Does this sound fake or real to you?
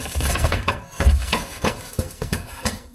fake